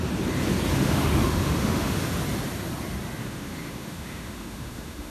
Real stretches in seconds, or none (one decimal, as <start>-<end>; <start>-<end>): 0.0-0.7; 2.0-3.2